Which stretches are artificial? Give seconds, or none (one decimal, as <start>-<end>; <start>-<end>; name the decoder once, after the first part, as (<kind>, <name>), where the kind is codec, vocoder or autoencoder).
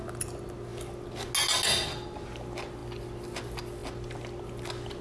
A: none